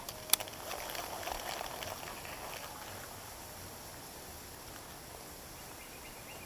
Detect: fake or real real